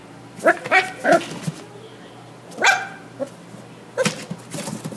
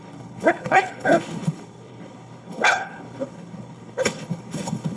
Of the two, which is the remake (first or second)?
second